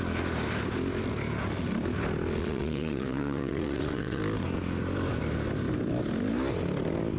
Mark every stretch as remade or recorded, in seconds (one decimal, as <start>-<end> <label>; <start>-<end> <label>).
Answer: 0.0-2.4 recorded; 2.4-4.2 remade; 4.2-7.2 recorded